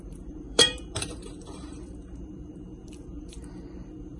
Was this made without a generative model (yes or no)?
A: no